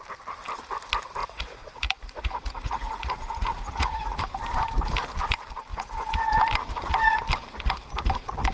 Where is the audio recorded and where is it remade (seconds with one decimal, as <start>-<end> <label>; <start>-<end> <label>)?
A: 0.0-1.2 recorded; 1.2-4.2 remade; 4.2-5.7 recorded; 5.7-6.2 remade; 6.2-8.5 recorded